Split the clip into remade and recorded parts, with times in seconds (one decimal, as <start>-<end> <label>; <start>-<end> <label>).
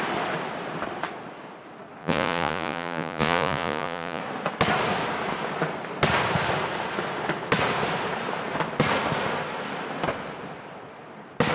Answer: 0.0-2.0 recorded; 2.0-4.2 remade; 4.2-11.5 recorded